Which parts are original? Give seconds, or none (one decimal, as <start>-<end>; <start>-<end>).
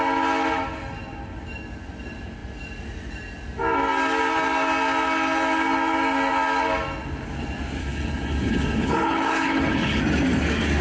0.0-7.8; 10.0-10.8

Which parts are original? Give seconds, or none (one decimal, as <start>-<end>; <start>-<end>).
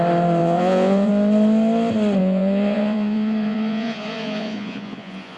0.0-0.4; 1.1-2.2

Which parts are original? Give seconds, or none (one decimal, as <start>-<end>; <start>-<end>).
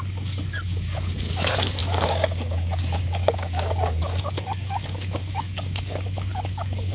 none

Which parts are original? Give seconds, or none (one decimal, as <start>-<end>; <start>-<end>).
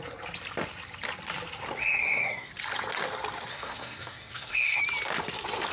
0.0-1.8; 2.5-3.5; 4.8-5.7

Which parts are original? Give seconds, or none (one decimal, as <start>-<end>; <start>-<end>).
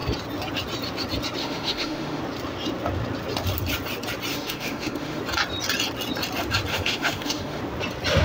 0.0-1.4; 2.2-4.3; 5.2-6.7; 7.6-8.2